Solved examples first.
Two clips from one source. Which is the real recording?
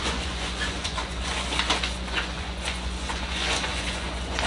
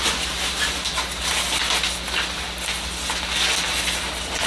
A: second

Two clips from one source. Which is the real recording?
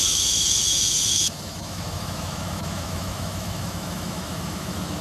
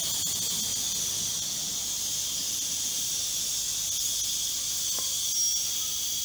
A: second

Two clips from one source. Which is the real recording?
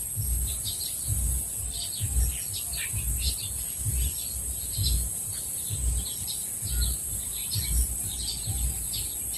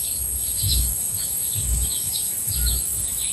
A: first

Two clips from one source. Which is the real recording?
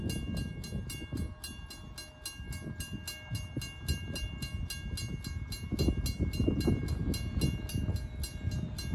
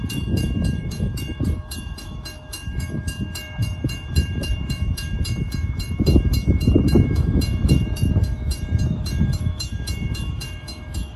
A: first